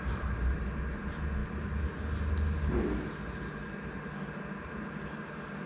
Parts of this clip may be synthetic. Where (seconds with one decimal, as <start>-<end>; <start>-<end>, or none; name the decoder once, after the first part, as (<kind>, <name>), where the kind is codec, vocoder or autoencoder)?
none